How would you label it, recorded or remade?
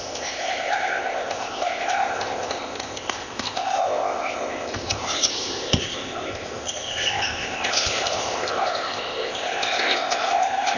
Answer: remade